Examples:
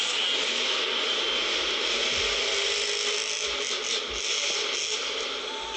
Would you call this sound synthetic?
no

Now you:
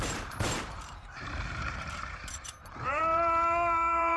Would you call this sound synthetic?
yes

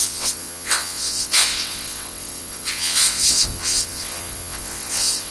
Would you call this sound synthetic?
yes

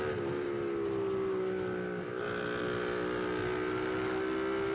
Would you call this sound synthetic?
no